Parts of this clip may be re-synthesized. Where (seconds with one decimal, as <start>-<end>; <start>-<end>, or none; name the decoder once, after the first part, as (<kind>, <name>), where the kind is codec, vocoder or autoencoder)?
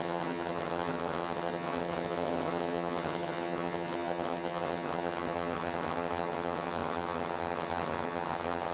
0.0-8.7 (vocoder, HiFi-GAN)